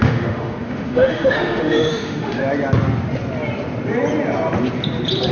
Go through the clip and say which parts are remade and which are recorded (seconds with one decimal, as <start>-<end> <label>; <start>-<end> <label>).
0.0-2.4 remade; 2.4-5.3 recorded